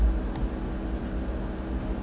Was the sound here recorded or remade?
recorded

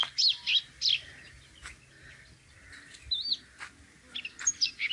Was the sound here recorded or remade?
recorded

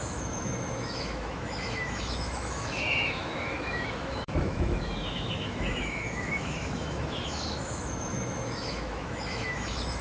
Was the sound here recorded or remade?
remade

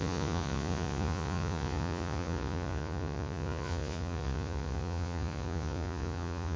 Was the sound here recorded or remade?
remade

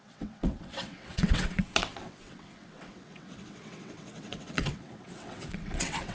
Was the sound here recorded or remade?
remade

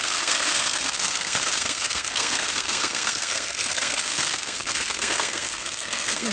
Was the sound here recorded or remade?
remade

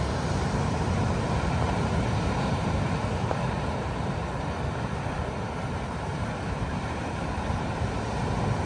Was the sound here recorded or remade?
remade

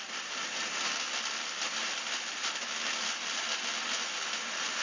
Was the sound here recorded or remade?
recorded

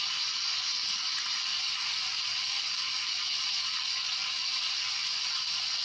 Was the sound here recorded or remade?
recorded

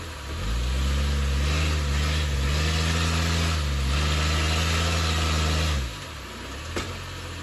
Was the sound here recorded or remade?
recorded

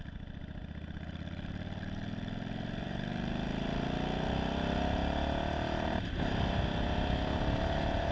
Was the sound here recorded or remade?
recorded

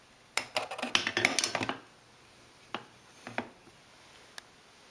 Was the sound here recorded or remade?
recorded